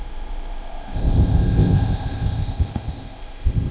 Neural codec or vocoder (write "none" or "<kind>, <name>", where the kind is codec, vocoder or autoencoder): codec, ZipCodec